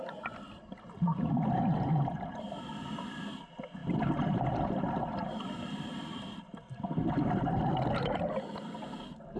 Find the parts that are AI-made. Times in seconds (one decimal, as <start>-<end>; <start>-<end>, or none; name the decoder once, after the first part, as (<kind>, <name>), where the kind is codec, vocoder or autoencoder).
1.1-1.9 (vocoder, BigVGAN v2); 3.8-8.3